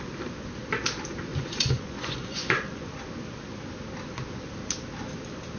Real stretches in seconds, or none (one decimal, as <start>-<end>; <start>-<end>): 0.0-1.3; 2.9-5.6